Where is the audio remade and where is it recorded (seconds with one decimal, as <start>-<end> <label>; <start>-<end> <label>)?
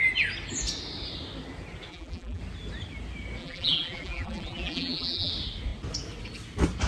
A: 0.0-1.9 recorded; 1.9-2.4 remade; 2.4-3.4 recorded; 3.4-5.3 remade; 5.3-6.9 recorded